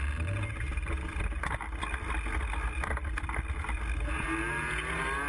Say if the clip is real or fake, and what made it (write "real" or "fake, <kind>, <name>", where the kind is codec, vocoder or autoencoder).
real